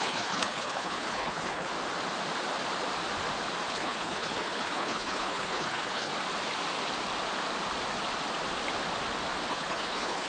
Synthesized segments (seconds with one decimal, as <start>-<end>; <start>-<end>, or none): 0.0-1.7; 3.7-6.1; 9.5-10.3